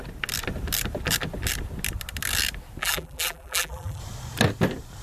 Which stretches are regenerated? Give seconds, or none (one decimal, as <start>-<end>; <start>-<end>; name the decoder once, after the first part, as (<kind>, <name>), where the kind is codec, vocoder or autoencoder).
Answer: 2.8-4.0 (vocoder, BigVGAN v2)